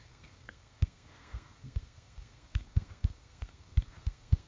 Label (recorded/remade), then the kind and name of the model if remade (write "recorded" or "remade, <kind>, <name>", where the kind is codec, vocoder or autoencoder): remade, codec, SNAC